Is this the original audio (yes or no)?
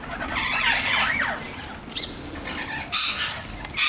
yes